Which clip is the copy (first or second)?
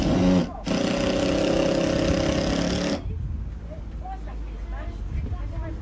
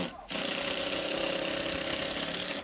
second